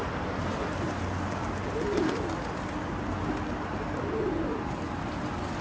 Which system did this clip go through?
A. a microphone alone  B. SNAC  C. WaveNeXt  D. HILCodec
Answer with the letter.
A